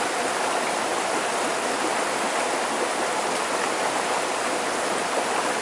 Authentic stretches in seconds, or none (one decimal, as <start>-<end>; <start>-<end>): 0.0-5.6